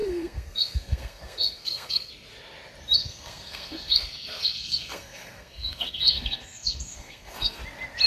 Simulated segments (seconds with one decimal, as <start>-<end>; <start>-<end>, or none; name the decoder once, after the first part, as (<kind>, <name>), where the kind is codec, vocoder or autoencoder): 0.0-2.1 (codec, SNAC); 3.0-7.6